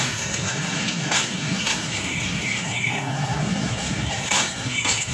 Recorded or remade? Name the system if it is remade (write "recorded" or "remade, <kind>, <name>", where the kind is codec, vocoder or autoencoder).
remade, codec, SNAC